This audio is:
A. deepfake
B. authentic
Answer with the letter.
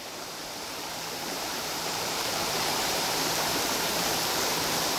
A